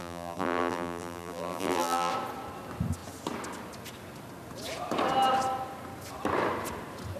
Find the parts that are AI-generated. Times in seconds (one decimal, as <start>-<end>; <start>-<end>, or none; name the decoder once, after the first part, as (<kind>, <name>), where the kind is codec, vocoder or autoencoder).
0.0-2.1 (vocoder, BigVGAN v2)